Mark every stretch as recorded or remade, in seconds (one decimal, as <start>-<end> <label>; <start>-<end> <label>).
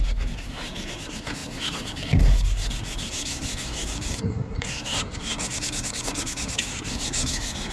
0.0-7.7 remade